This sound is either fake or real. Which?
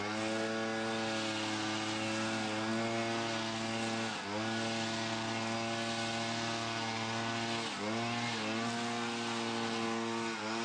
real